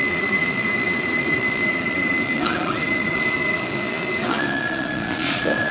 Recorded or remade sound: remade